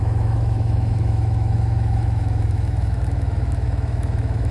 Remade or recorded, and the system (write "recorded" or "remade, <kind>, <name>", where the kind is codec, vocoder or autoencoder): remade, autoencoder, DAC-VAE